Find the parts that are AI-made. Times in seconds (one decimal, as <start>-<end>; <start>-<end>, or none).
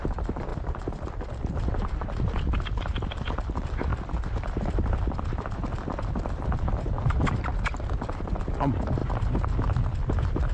0.0-7.5; 8.4-9.0; 9.8-10.5